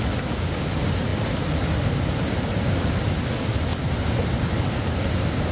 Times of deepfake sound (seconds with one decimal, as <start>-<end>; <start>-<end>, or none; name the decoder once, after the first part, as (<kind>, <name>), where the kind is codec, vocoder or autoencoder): none